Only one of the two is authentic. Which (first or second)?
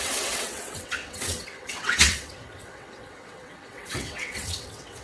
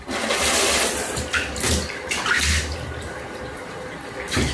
second